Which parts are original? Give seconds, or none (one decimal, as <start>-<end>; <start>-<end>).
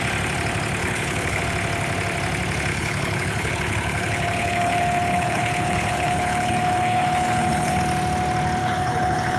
0.0-0.8; 1.4-2.7; 7.8-8.6